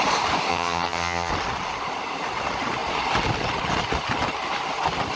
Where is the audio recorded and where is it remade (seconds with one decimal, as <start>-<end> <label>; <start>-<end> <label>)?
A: 0.0-0.5 recorded; 0.5-1.3 remade; 1.3-5.2 recorded